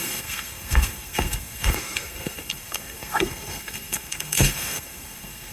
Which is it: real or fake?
fake